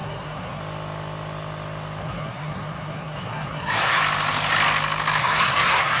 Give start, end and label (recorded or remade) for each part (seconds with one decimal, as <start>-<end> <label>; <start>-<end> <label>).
0.0-0.6 remade; 0.6-2.0 recorded; 2.0-4.0 remade; 4.0-5.2 recorded; 5.2-6.0 remade